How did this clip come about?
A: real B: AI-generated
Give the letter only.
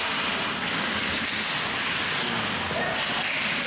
A